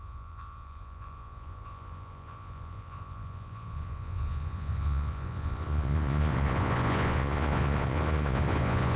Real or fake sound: fake